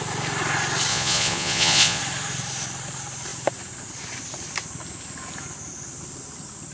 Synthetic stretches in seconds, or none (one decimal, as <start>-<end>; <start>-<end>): 0.9-2.0

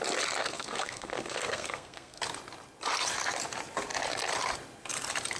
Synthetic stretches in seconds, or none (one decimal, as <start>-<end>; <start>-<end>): 0.4-2.2

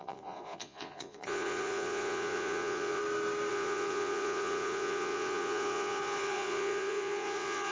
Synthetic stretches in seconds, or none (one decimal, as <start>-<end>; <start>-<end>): 0.0-3.0; 3.5-7.7

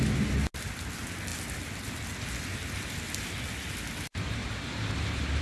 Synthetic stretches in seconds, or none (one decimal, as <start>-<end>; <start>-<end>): 4.4-5.0

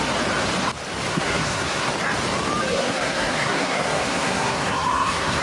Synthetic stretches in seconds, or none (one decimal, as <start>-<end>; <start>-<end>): 1.1-1.9; 2.7-5.4

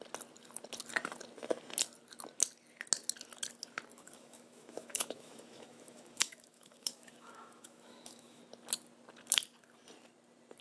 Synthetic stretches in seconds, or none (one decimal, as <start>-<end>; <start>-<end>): 3.9-8.4

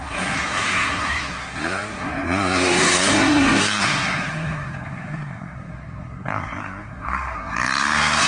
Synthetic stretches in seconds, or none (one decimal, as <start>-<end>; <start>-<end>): 0.0-8.3

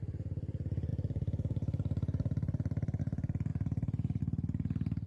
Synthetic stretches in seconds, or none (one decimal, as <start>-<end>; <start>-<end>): 0.9-3.0; 3.5-4.2